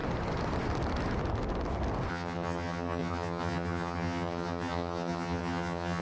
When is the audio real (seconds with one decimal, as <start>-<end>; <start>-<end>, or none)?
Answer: 0.0-2.1